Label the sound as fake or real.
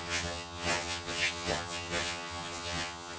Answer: fake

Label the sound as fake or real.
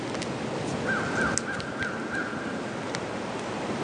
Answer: real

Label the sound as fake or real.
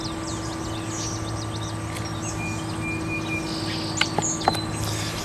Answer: real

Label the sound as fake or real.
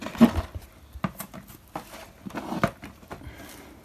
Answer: real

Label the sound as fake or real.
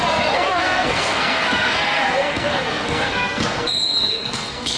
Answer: fake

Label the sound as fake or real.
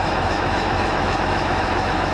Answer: fake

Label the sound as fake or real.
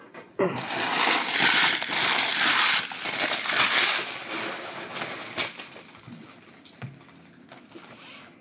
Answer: real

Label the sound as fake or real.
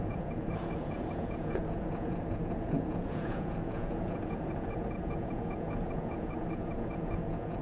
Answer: fake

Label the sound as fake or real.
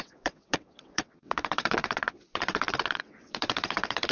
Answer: fake